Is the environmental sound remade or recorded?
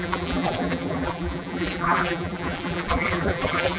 remade